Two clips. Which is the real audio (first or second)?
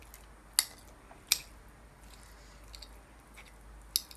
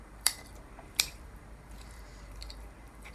first